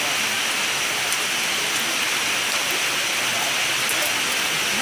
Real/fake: real